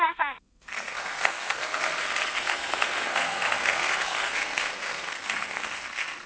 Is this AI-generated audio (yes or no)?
yes